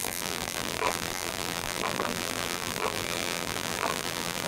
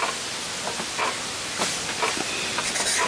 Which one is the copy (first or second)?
first